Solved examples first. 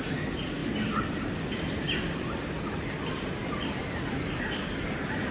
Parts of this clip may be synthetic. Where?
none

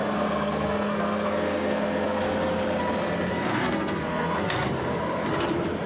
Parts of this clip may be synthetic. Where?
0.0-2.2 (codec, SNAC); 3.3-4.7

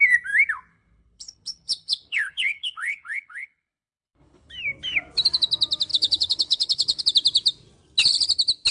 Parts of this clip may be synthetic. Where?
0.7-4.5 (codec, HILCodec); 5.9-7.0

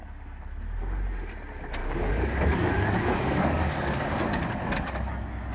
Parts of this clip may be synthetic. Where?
1.8-5.1 (codec, DAC)

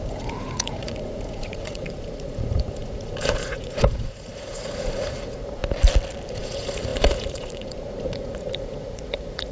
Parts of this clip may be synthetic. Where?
0.0-5.6 (vocoder, Vocos); 6.3-9.5

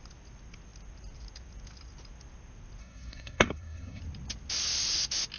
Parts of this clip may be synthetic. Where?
2.8-4.0 (codec, SNAC)

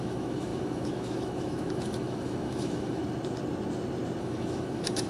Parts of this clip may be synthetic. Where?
0.0-3.0 (autoencoder, DAC-VAE); 4.2-5.1